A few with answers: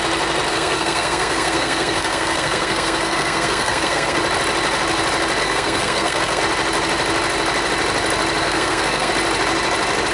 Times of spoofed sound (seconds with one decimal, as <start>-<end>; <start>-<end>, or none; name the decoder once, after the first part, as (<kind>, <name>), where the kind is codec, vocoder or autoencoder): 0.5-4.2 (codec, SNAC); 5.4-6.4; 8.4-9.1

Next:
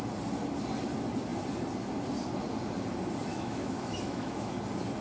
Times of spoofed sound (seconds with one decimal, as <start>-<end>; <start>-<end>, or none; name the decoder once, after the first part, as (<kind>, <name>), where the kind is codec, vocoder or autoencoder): 3.3-4.6 (autoencoder, DAC-VAE)

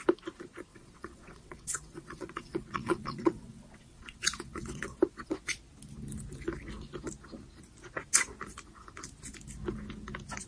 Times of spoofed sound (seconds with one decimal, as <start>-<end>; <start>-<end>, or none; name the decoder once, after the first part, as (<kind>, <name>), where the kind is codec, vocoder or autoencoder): 0.7-5.3 (vocoder, WaveNeXt)

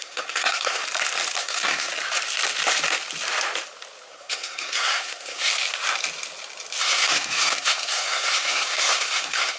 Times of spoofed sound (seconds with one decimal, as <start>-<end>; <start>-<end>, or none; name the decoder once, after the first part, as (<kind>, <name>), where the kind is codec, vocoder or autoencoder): 0.0-0.8 (codec, SNAC); 1.4-1.9; 4.1-5.5; 6.8-9.6

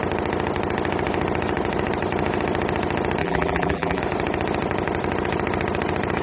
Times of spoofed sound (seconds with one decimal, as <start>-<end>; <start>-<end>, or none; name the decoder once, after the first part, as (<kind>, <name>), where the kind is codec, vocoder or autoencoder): 3.2-4.0 (vocoder, BigVGAN v2)

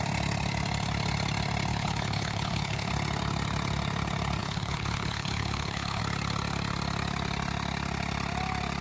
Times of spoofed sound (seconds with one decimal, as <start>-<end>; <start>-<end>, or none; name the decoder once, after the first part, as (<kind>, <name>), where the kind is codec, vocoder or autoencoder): 1.7-2.9 (codec, HILCodec); 4.4-6.0

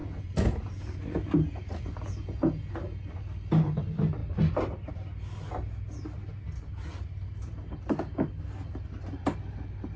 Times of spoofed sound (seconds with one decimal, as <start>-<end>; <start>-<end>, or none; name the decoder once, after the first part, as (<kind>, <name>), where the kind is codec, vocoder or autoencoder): 0.0-3.0 (vocoder, Vocos)